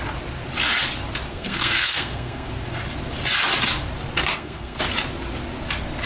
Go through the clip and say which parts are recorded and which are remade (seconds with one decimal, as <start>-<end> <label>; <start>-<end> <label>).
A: 0.0-1.3 recorded; 1.3-2.5 remade; 2.5-4.3 recorded; 4.3-4.8 remade; 4.8-6.1 recorded